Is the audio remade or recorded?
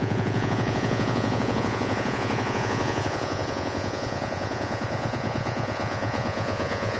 remade